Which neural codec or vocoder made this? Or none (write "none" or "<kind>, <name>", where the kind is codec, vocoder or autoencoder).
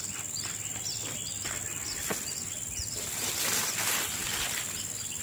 none